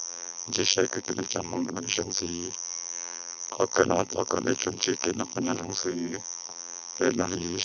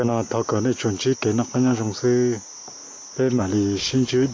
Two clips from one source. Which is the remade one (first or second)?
first